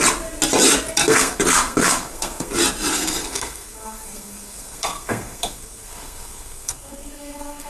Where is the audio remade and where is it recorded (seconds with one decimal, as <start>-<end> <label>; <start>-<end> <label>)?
0.0-1.0 recorded; 1.0-2.5 remade; 2.5-2.9 recorded; 2.9-7.7 remade

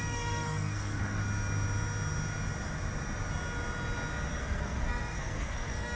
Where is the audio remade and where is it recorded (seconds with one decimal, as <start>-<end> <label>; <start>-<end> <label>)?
0.0-1.2 remade; 1.2-4.4 recorded; 4.4-6.0 remade

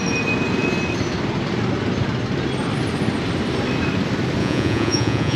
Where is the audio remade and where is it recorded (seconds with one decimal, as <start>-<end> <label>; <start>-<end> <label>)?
0.0-4.4 recorded; 4.4-5.4 remade

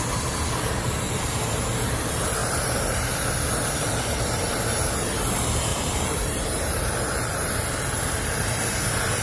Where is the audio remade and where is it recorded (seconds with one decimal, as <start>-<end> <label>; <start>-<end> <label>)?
0.0-2.4 recorded; 2.4-3.1 remade; 3.1-5.7 recorded; 5.7-7.6 remade; 7.6-9.2 recorded

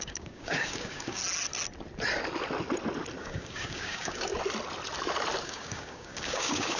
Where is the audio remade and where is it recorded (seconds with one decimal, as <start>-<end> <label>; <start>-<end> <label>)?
0.0-1.2 remade; 1.2-3.2 recorded; 3.2-4.3 remade; 4.3-5.4 recorded; 5.4-6.8 remade

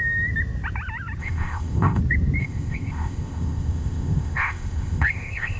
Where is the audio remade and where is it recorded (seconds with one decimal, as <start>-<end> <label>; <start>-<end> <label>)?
0.0-1.2 recorded; 1.2-2.0 remade; 2.0-2.4 recorded; 2.4-5.6 remade